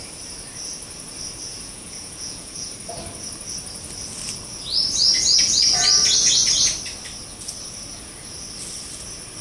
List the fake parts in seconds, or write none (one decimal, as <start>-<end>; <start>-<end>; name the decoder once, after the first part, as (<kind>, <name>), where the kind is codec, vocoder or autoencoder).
1.5-2.7 (vocoder, Vocos)

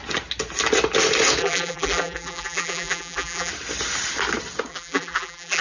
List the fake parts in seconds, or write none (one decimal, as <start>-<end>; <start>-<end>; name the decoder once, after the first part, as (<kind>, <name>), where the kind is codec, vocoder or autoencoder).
1.4-3.5 (vocoder, BigVGAN v2); 4.7-5.6

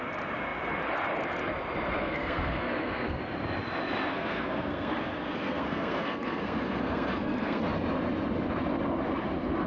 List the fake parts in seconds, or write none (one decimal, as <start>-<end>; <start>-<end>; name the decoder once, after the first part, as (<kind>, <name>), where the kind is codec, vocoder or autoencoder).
2.0-3.2 (codec, SNAC); 4.1-7.7